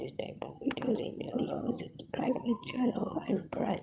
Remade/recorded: remade